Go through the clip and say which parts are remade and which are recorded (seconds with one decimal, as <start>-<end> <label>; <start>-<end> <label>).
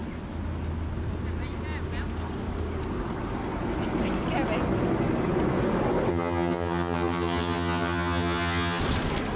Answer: 0.0-6.1 recorded; 6.1-8.8 remade; 8.8-9.4 recorded